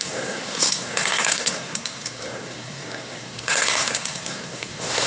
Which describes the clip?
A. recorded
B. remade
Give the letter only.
B